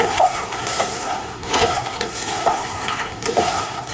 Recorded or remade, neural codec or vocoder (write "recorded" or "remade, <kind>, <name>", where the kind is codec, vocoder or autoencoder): remade, codec, SNAC